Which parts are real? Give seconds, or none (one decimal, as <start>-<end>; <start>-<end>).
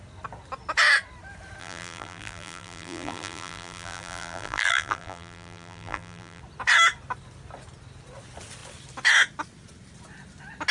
0.0-1.6; 6.4-10.7